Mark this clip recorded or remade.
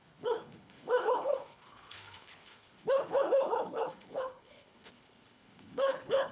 remade